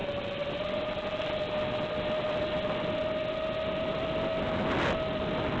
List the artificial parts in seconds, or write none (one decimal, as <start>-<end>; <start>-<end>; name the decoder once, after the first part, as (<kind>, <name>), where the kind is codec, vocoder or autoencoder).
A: none